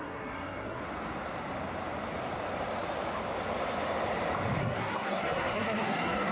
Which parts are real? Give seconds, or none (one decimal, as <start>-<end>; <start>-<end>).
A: 0.8-4.6